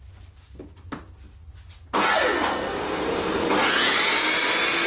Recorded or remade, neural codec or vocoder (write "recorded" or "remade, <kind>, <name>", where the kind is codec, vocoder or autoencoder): recorded